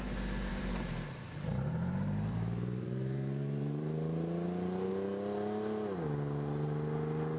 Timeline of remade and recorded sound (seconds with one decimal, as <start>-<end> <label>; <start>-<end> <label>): 0.0-0.5 recorded; 0.5-4.9 remade; 4.9-7.4 recorded